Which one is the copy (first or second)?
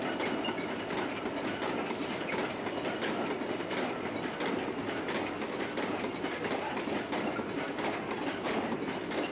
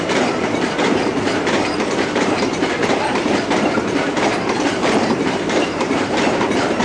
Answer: second